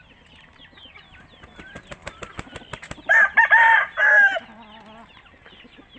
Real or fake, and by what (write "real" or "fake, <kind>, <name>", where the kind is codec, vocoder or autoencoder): real